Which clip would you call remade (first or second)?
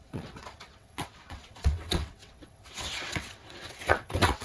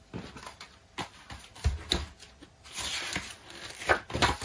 first